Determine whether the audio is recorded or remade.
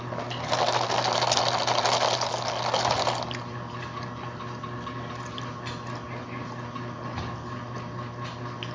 recorded